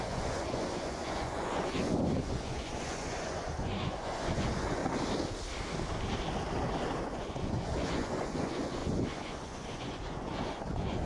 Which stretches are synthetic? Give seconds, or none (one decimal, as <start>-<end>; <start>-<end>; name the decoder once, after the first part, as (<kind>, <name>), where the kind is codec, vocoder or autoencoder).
0.0-4.8 (vocoder, Vocos); 7.0-11.1